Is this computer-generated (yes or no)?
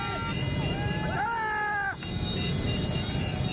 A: no